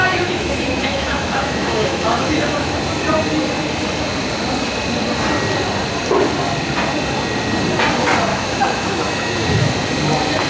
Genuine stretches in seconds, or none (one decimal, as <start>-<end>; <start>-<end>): 2.8-8.3; 9.7-10.5